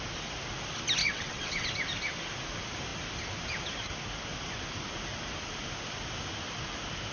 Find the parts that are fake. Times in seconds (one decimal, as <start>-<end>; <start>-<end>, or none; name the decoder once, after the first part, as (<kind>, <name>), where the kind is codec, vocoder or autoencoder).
1.0-1.7 (vocoder, WaveNeXt)